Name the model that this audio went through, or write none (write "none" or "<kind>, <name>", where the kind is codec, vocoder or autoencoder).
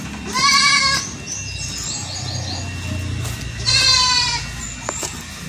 none